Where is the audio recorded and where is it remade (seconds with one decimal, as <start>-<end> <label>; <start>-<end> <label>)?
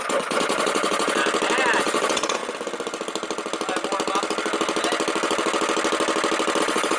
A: 0.0-1.2 remade; 1.2-1.8 recorded; 1.8-2.4 remade; 2.4-6.6 recorded; 6.6-7.0 remade